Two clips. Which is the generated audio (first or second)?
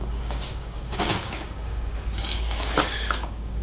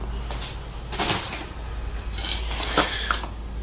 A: first